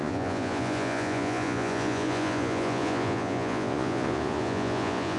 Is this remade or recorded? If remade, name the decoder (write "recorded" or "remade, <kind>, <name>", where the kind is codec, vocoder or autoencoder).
remade, vocoder, Vocos